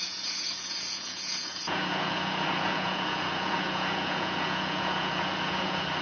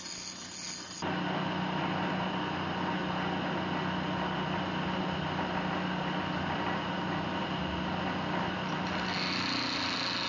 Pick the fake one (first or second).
first